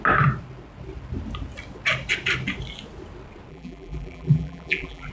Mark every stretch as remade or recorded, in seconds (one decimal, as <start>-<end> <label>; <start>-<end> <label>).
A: 0.0-3.5 recorded; 3.5-5.1 remade